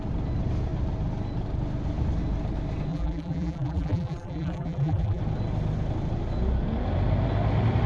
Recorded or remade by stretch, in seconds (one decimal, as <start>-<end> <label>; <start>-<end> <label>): 0.0-2.9 recorded; 2.9-5.2 remade; 5.2-7.9 recorded